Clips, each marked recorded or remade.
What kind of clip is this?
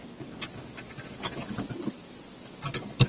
recorded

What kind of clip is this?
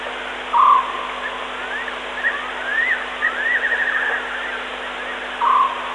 recorded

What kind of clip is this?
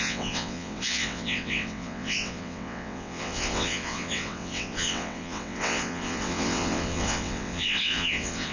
remade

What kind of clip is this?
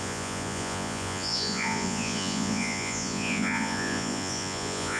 remade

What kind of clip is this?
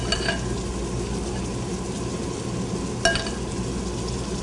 recorded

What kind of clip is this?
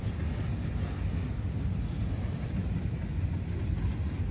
recorded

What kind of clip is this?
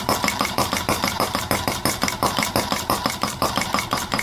remade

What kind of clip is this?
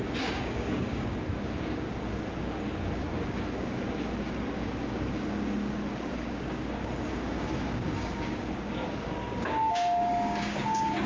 remade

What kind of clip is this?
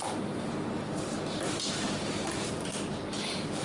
recorded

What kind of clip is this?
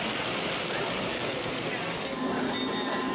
recorded